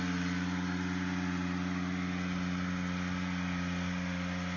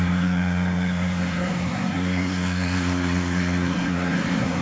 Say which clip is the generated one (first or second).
second